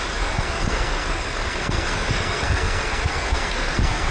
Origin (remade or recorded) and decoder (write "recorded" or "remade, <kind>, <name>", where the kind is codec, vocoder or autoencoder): remade, codec, SNAC